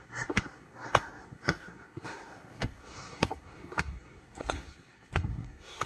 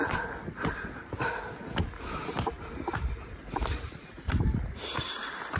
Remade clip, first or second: first